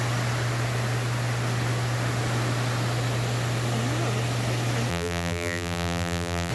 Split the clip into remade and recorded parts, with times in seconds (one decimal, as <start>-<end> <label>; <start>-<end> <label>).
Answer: 0.0-4.9 recorded; 4.9-6.5 remade